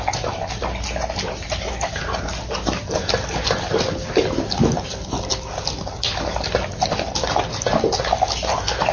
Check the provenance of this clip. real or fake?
real